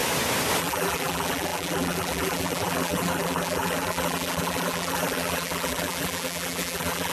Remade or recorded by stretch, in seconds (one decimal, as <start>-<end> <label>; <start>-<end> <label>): 0.0-0.6 recorded; 0.6-7.1 remade